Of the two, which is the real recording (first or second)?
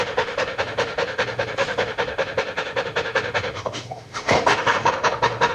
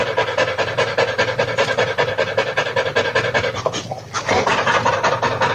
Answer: second